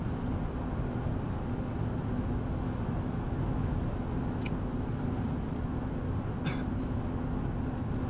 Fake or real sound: real